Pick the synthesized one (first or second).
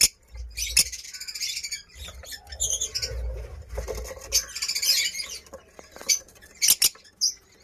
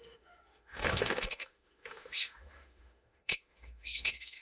second